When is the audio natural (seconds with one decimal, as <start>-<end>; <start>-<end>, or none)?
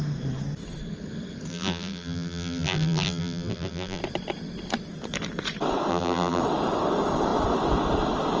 0.0-1.5; 4.0-5.9; 6.4-8.4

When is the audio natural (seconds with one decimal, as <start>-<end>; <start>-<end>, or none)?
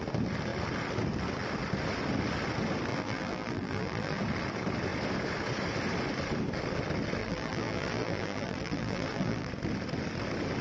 0.0-2.9; 4.2-7.2; 9.5-10.6